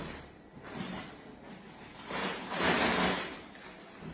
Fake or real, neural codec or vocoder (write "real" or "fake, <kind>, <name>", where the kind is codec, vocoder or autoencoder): real